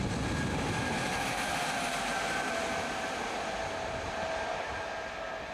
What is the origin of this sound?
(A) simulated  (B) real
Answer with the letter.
B